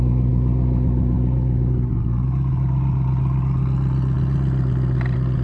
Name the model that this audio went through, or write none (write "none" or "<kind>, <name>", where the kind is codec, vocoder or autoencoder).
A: none